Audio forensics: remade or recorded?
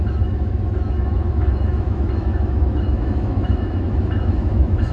remade